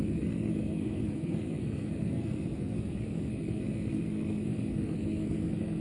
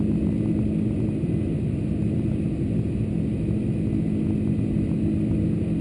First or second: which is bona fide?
second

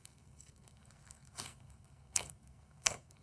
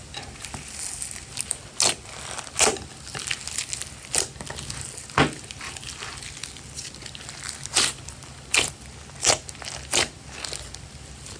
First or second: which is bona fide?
second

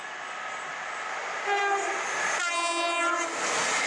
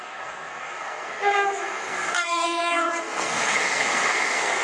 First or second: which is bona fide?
first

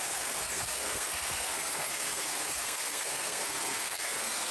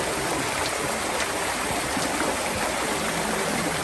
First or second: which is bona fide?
second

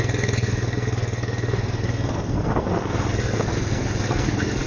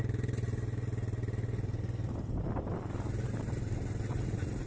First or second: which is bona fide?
second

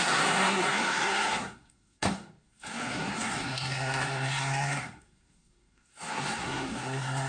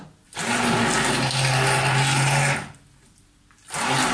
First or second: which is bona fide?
second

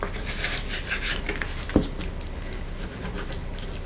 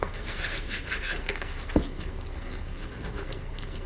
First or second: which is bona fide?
first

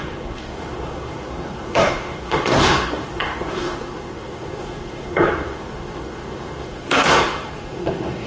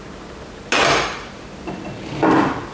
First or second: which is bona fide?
second